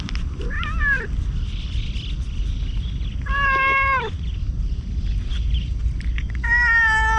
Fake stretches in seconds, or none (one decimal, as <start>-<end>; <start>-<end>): none